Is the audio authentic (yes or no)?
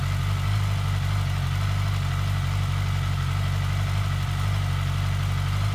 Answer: yes